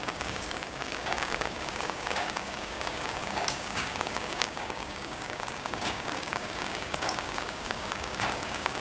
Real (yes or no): no